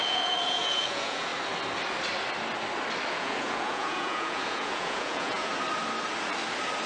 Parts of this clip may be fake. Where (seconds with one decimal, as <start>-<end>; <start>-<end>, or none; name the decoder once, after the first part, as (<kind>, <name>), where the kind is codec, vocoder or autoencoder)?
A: 0.0-1.3 (vocoder, Vocos); 3.1-5.5